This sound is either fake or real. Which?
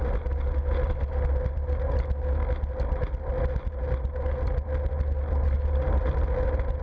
real